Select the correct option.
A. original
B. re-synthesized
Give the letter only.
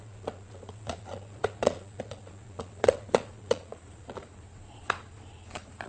B